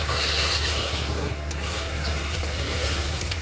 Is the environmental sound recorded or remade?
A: remade